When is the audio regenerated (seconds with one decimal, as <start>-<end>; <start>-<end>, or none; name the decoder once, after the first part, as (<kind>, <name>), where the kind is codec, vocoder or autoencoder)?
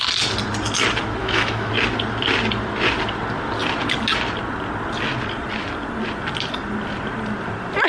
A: 1.2-1.7 (autoencoder, DAC-VAE)